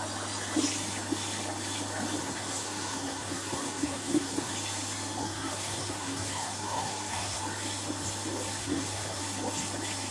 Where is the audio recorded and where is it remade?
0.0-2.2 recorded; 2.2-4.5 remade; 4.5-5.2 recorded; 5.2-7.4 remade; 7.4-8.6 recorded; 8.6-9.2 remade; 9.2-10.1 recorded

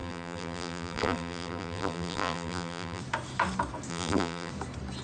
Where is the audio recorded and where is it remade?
0.0-3.0 remade; 3.0-3.9 recorded; 3.9-4.5 remade; 4.5-5.0 recorded

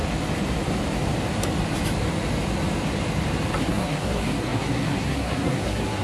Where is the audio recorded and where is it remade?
0.0-3.6 recorded; 3.6-6.0 remade

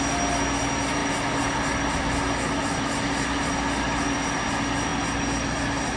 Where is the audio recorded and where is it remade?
0.0-6.0 recorded

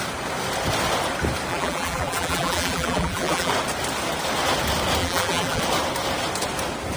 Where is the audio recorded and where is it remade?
0.0-1.5 recorded; 1.5-3.5 remade; 3.5-5.0 recorded; 5.0-5.6 remade; 5.6-7.0 recorded

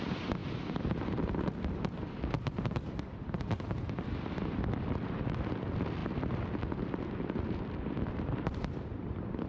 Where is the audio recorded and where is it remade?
0.0-6.0 remade; 6.0-7.0 recorded; 7.0-9.5 remade

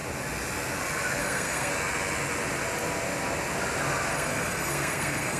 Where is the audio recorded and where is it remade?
0.0-1.2 recorded; 1.2-1.7 remade; 1.7-4.1 recorded; 4.1-5.4 remade